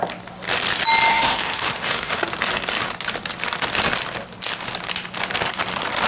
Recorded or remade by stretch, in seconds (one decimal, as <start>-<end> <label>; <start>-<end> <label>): 0.0-1.1 recorded; 1.1-2.2 remade; 2.2-6.1 recorded